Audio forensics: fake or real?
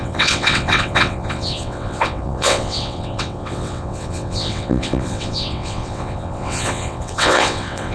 fake